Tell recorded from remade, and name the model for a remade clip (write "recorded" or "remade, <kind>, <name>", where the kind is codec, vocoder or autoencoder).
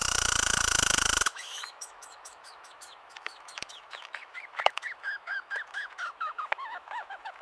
remade, autoencoder, DAC-VAE